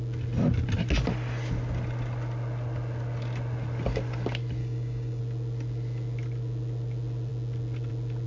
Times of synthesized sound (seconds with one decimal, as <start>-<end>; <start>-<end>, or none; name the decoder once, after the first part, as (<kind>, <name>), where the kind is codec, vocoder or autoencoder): 4.6-5.2 (codec, DAC)